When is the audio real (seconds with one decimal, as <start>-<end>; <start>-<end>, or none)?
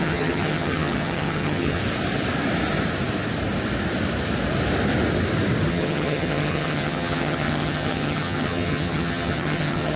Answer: 1.8-5.7